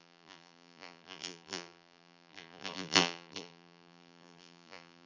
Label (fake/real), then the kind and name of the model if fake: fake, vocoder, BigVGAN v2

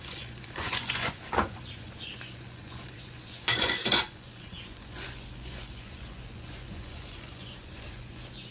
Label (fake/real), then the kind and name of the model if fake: fake, vocoder, Vocos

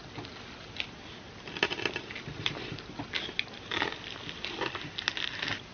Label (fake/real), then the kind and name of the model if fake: real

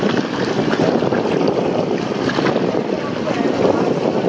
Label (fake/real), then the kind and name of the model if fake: real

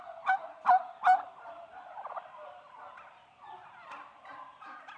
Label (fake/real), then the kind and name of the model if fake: real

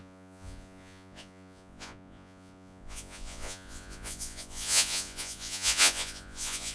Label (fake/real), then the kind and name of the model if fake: fake, vocoder, Vocos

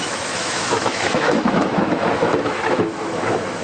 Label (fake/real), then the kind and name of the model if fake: fake, autoencoder, DAC-VAE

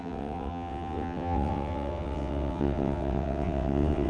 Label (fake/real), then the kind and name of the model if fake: fake, vocoder, WaveNeXt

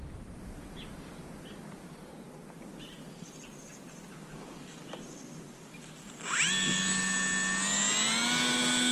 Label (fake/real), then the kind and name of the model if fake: real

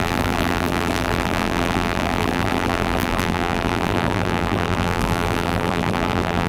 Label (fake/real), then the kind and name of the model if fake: fake, vocoder, BigVGAN v2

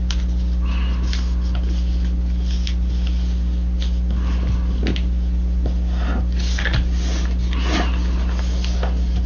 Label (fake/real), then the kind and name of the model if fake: real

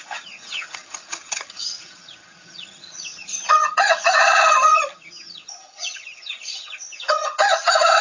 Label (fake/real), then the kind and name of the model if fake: fake, vocoder, HiFi-GAN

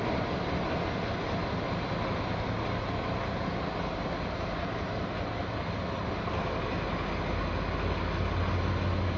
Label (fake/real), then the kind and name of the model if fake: real